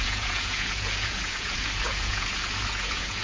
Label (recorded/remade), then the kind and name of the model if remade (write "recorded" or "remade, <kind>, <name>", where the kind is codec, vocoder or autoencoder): remade, vocoder, Vocos